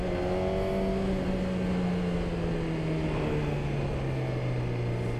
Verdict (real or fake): real